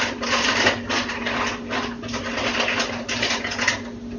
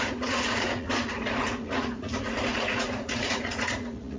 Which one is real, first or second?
first